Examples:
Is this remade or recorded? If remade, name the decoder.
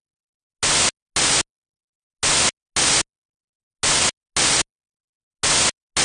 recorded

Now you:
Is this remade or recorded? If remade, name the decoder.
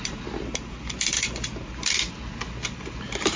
recorded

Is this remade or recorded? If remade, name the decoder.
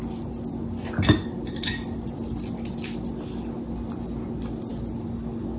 recorded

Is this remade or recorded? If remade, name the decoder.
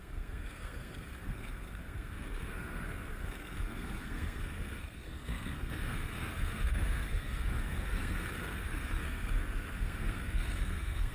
remade, codec, SNAC